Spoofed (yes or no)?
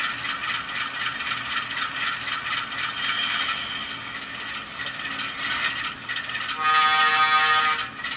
no